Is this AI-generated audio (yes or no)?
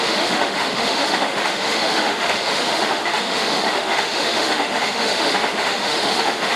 yes